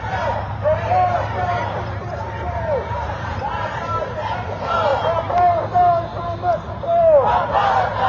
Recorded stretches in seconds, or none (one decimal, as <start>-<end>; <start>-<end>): 4.9-8.1